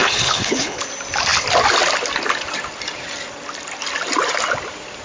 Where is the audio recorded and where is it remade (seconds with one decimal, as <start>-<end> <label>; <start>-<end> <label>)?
0.0-0.8 remade; 0.8-5.0 recorded